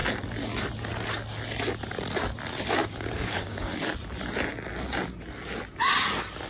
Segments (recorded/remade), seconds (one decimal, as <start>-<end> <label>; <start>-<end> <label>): 0.0-2.8 recorded; 2.8-3.8 remade; 3.8-6.5 recorded

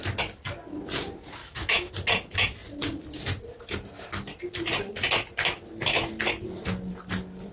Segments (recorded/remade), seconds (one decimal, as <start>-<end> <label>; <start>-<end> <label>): 0.0-1.4 recorded; 1.4-1.9 remade; 1.9-7.5 recorded

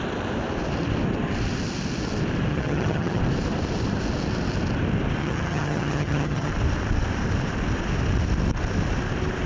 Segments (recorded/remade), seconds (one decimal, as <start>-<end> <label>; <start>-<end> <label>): 0.0-2.5 recorded; 2.5-3.2 remade; 3.2-5.2 recorded; 5.2-6.5 remade; 6.5-9.5 recorded

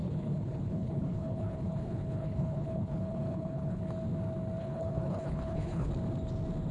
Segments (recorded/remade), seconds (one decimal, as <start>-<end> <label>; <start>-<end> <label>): 0.0-3.8 remade; 3.8-4.6 recorded; 4.6-5.9 remade; 5.9-6.7 recorded

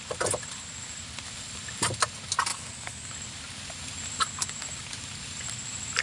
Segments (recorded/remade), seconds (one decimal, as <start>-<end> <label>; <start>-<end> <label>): 0.0-2.5 recorded; 2.5-3.1 remade; 3.1-6.0 recorded